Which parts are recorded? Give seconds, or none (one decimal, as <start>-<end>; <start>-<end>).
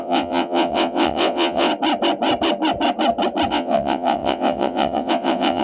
1.7-3.5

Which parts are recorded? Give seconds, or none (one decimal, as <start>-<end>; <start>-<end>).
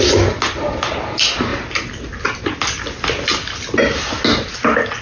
0.0-5.0